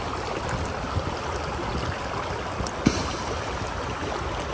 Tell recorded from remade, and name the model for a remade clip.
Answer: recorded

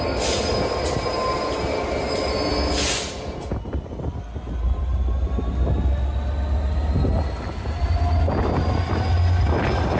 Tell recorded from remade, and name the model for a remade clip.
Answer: recorded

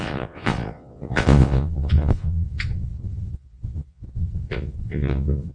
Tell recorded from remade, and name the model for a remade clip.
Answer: remade, vocoder, Vocos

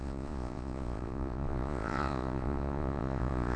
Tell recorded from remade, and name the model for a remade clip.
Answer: remade, vocoder, Vocos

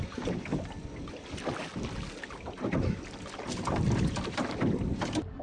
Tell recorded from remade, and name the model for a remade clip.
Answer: recorded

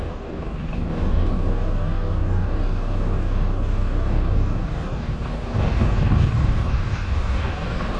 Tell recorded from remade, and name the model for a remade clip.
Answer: remade, codec, DAC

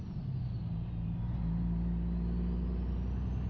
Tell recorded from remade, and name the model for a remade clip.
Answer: recorded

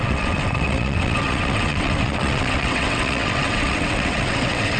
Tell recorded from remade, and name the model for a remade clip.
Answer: remade, vocoder, WaveNeXt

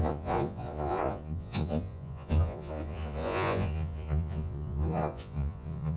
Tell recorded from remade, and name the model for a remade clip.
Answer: remade, vocoder, Vocos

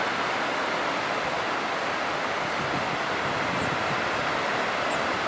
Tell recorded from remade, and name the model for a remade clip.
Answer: recorded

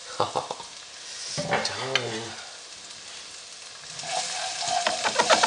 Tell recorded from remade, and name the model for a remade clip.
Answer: recorded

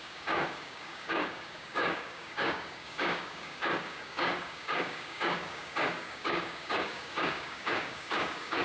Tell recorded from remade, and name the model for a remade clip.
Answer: remade, codec, DAC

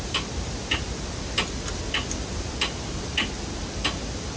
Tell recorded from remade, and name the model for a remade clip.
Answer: recorded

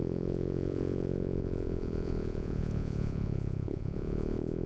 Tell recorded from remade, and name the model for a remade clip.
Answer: remade, vocoder, Vocos